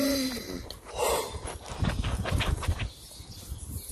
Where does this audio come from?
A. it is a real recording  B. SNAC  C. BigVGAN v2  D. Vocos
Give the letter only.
A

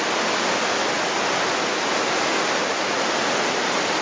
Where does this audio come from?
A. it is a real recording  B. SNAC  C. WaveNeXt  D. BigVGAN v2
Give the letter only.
A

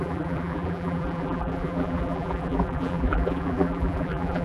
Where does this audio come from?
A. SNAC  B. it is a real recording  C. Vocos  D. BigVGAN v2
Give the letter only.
D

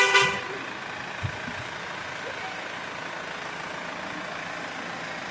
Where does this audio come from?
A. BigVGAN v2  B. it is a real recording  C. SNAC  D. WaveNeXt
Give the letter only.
B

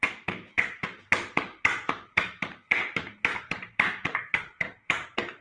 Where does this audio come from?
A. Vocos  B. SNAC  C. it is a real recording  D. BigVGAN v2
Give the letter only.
D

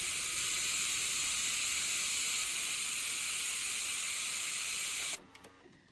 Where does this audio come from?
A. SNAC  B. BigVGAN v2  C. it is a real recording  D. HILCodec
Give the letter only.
B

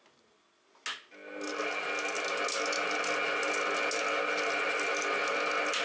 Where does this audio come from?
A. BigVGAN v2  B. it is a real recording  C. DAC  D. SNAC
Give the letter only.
B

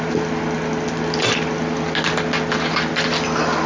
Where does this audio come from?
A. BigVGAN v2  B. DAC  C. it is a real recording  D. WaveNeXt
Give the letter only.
C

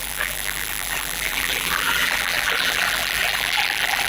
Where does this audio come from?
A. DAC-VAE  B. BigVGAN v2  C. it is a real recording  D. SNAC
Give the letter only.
B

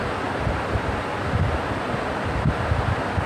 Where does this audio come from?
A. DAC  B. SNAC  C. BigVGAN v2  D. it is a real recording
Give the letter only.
C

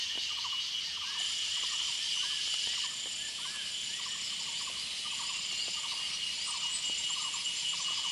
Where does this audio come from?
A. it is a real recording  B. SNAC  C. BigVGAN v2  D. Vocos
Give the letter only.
A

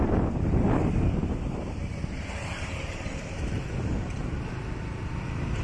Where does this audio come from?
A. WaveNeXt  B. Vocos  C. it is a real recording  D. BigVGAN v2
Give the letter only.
D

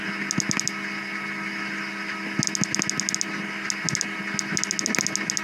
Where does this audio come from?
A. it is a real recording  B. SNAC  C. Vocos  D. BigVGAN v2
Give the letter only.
A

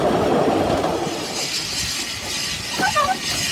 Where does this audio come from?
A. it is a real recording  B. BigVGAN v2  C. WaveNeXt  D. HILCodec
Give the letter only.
A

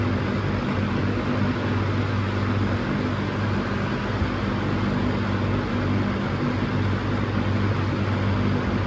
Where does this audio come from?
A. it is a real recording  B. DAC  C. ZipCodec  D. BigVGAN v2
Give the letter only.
A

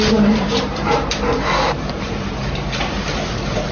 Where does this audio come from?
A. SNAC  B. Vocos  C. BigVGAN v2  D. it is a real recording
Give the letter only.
C